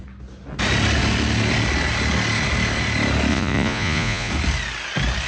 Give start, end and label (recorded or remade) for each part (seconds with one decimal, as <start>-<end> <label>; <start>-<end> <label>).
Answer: 0.0-3.3 recorded; 3.3-4.3 remade; 4.3-5.3 recorded